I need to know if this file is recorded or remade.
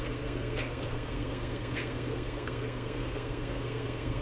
remade